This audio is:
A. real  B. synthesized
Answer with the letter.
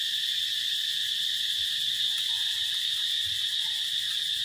A